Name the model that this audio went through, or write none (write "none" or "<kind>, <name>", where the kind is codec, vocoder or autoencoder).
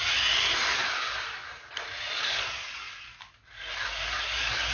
none